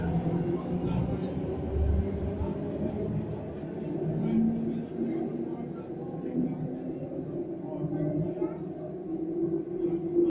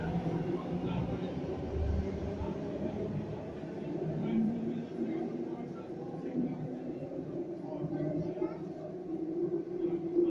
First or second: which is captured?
first